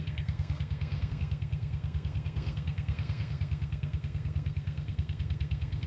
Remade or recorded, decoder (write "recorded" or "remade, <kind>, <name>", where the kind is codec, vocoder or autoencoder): remade, codec, SNAC